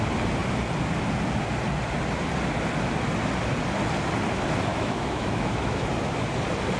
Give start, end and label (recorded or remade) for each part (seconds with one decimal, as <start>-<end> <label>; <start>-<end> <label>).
0.0-4.7 recorded; 4.7-5.9 remade; 5.9-6.8 recorded

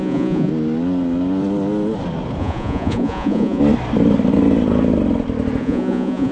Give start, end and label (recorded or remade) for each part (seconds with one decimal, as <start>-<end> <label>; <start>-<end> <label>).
0.0-0.5 remade; 0.5-2.4 recorded; 2.4-3.6 remade; 3.6-5.6 recorded; 5.6-6.3 remade